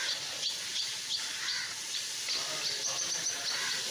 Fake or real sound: real